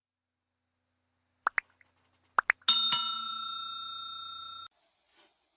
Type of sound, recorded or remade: recorded